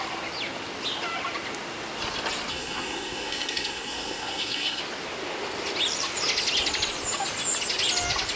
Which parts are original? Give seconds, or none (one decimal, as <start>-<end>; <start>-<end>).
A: 0.0-2.5; 4.8-8.4